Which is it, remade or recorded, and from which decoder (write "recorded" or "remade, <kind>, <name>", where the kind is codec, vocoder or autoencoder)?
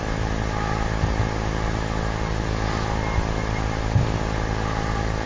recorded